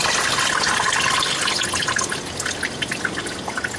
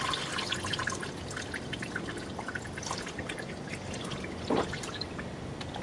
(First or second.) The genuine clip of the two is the first